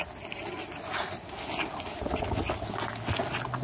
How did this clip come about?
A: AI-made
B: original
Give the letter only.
B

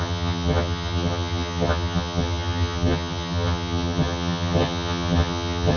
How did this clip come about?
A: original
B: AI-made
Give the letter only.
B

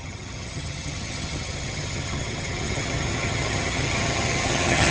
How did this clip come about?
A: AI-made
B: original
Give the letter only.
A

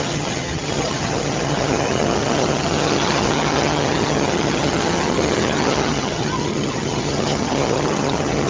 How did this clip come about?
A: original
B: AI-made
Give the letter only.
B